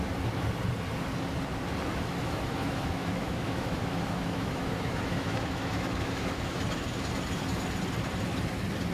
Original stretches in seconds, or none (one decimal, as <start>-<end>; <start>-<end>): 0.0-1.9; 6.6-8.9